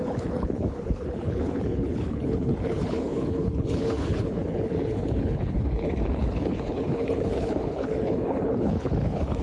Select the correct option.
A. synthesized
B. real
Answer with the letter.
A